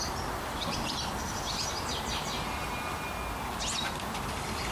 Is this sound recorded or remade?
recorded